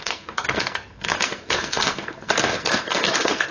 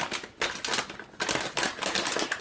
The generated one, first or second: first